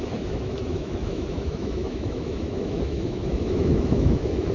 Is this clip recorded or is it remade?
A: remade